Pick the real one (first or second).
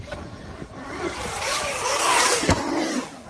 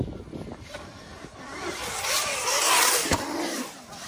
second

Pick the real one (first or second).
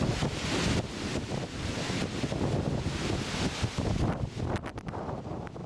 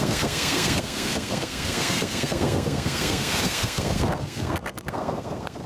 first